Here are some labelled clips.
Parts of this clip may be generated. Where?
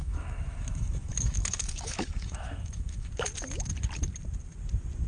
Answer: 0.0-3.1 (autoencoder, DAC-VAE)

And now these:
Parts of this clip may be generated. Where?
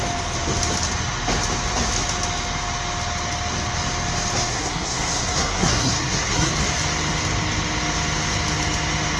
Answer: 4.5-6.5 (codec, SNAC)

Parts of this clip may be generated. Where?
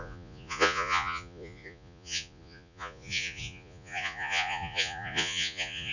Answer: 0.0-5.9 (vocoder, Vocos)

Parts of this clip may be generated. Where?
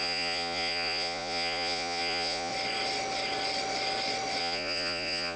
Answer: 0.0-2.5 (vocoder, Vocos); 4.4-5.4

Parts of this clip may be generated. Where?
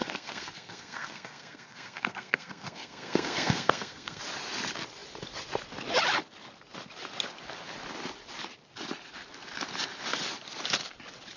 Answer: 0.0-4.2 (codec, SNAC)